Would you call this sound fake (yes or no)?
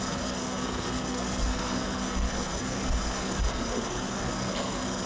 yes